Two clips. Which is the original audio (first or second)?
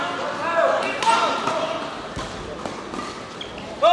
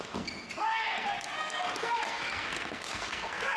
first